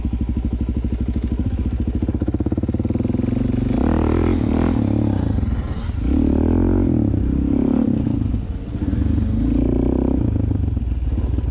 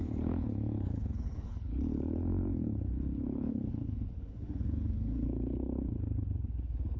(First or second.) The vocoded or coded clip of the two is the second